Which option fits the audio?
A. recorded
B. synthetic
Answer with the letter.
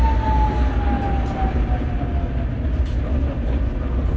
A